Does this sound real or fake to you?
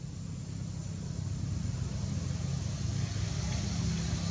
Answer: real